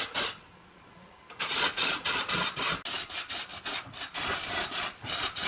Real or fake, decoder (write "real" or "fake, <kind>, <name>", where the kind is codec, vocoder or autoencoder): real